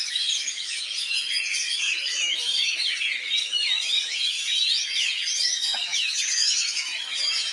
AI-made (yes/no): yes